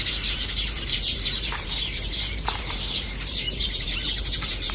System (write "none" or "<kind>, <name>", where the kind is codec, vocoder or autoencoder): vocoder, BigVGAN v2